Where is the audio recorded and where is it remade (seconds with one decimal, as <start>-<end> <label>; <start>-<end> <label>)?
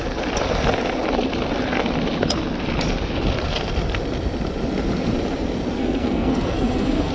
0.0-5.8 recorded; 5.8-7.1 remade